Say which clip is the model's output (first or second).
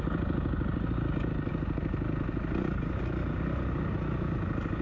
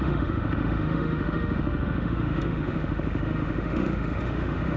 second